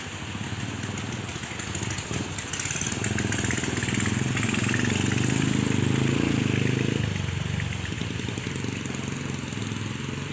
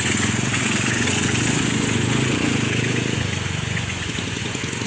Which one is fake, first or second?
second